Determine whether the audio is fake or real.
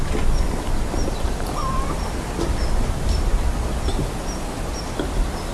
real